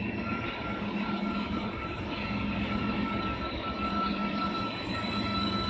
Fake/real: fake